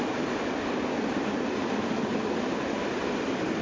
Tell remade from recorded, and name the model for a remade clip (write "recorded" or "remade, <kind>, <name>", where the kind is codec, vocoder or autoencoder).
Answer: recorded